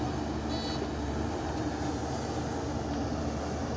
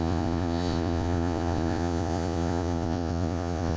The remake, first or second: second